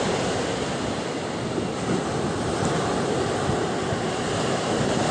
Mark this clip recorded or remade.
recorded